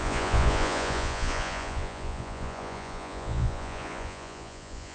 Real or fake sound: fake